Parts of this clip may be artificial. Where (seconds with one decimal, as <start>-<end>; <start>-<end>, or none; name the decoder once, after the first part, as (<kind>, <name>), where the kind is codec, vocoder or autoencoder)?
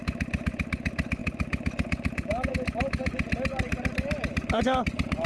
3.5-4.6 (vocoder, BigVGAN v2)